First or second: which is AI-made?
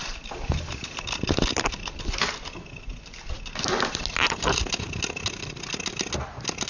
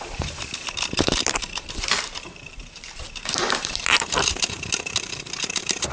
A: second